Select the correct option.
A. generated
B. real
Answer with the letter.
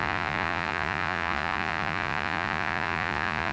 A